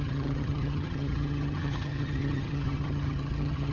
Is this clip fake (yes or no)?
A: yes